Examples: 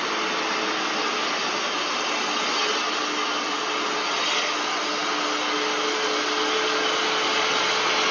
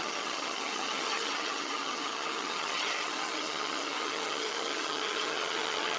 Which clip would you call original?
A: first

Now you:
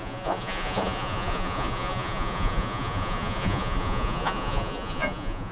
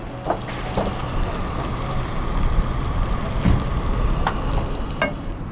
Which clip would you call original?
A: second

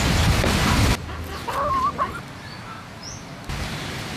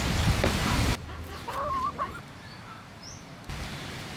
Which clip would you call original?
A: first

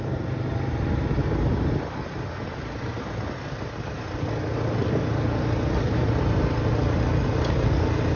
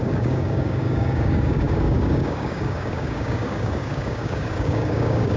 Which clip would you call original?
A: first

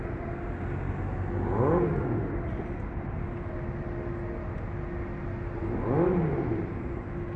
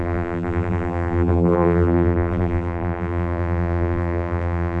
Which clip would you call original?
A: first